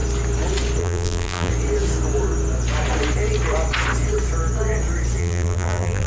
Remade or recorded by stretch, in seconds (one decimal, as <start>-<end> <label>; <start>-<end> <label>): 0.0-0.8 recorded; 0.8-1.5 remade; 1.5-5.2 recorded; 5.2-6.1 remade